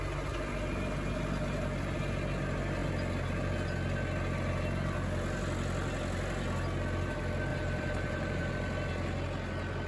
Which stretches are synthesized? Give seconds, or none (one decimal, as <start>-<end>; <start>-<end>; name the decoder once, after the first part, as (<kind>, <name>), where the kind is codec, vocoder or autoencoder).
7.5-8.5 (vocoder, BigVGAN v2)